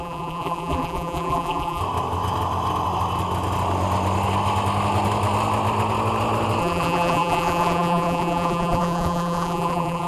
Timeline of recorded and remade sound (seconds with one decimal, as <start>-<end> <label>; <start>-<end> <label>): 0.0-1.8 remade; 1.8-6.6 recorded; 6.6-10.1 remade